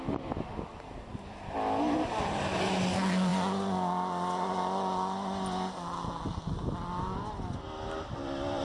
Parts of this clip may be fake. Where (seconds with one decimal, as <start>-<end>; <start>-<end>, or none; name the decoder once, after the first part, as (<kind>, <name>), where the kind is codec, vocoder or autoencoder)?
none